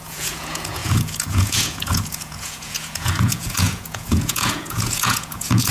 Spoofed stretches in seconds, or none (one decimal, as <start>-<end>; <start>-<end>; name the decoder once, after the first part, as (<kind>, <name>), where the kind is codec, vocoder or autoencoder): 0.0-5.7 (vocoder, Vocos)